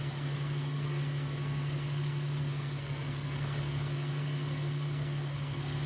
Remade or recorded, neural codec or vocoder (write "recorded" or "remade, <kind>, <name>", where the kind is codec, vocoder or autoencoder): remade, codec, SNAC